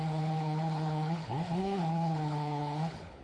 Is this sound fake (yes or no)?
yes